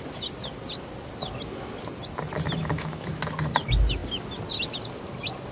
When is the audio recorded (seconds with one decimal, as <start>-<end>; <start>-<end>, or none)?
0.0-2.6; 3.1-5.5